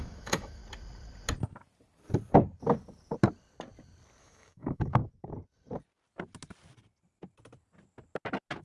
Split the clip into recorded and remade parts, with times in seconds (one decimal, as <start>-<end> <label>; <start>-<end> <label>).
0.0-0.6 remade; 0.6-4.2 recorded; 4.2-5.0 remade; 5.0-8.6 recorded